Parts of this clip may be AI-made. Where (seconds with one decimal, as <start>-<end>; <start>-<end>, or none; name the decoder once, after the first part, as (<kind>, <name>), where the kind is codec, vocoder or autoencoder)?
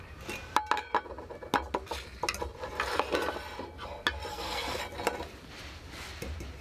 4.3-4.8 (codec, SNAC)